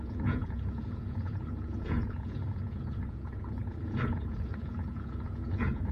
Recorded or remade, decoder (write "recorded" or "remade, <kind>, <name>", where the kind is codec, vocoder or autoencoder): remade, vocoder, Vocos